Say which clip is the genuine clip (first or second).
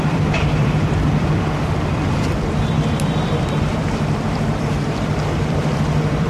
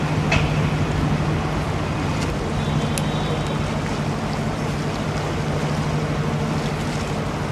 second